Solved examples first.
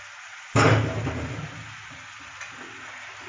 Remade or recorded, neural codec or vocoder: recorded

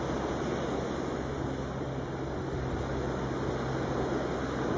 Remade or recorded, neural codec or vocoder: recorded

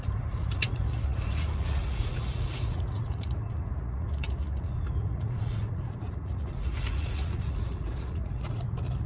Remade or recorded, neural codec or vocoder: remade, vocoder, Vocos